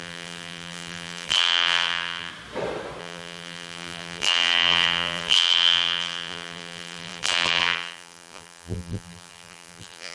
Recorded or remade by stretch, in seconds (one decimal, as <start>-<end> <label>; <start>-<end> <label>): 0.0-2.3 remade; 2.3-3.0 recorded; 3.0-10.1 remade